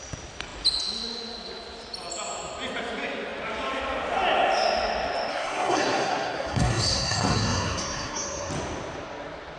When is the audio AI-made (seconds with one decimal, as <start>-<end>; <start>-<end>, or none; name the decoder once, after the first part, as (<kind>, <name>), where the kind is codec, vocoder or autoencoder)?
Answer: 5.3-8.5 (codec, SNAC)